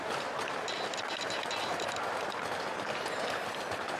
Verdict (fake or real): real